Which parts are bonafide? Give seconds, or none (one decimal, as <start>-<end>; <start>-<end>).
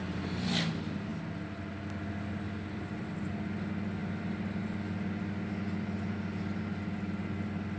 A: 0.0-7.8